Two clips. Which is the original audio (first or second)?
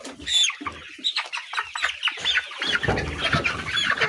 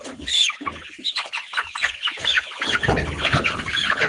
first